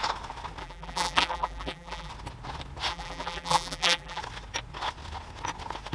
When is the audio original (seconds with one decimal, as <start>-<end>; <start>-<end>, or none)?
0.0-0.6; 2.1-2.9; 4.2-5.9